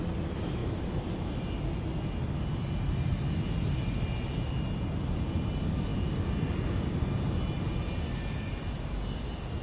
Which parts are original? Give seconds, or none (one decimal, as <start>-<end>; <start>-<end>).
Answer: 0.0-0.6; 1.4-9.6